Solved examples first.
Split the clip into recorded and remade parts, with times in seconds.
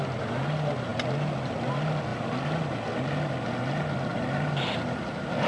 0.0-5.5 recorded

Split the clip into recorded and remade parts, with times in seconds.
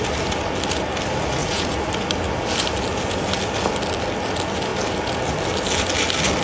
0.0-1.4 recorded; 1.4-1.9 remade; 1.9-6.4 recorded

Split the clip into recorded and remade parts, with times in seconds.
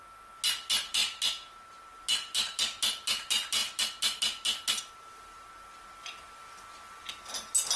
0.0-7.8 recorded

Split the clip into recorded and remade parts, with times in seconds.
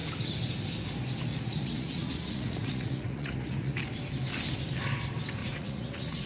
0.0-1.3 recorded; 1.3-3.8 remade; 3.8-5.4 recorded; 5.4-6.3 remade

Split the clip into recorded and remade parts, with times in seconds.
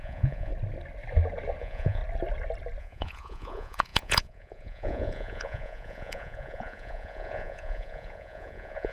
0.0-0.5 remade; 0.5-1.6 recorded; 1.6-2.0 remade; 2.0-2.8 recorded; 2.8-8.9 remade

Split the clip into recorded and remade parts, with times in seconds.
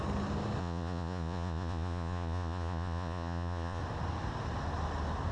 0.0-0.6 recorded; 0.6-3.8 remade; 3.8-5.3 recorded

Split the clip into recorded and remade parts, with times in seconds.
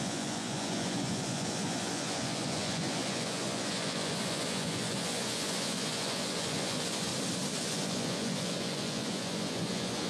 0.0-7.1 remade; 7.1-7.6 recorded; 7.6-10.1 remade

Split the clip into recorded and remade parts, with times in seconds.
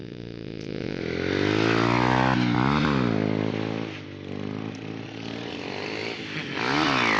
0.0-1.0 remade; 1.0-7.2 recorded